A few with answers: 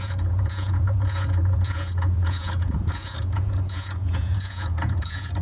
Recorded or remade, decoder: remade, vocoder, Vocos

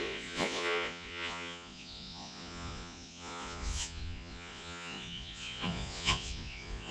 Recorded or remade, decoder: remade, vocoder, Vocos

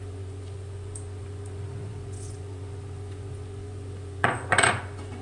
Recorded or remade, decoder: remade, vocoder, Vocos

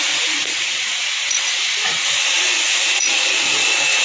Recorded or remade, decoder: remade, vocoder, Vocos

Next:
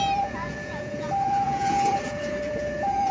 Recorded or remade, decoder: remade, vocoder, Vocos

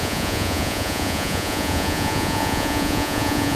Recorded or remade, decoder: remade, vocoder, Vocos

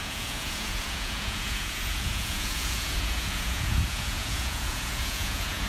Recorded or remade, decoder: remade, vocoder, Vocos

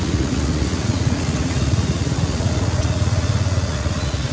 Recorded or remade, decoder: remade, vocoder, Vocos